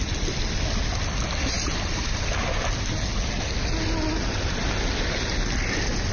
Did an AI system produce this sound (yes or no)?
no